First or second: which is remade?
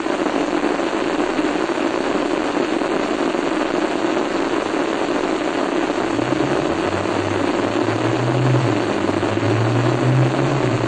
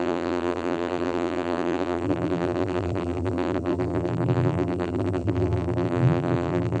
second